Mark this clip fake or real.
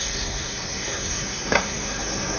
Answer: fake